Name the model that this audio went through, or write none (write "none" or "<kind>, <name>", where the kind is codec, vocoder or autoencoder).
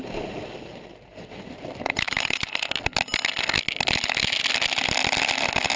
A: none